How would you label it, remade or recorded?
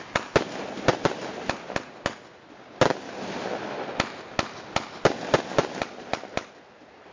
recorded